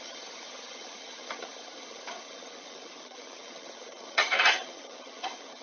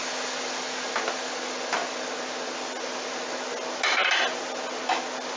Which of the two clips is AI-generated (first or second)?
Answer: first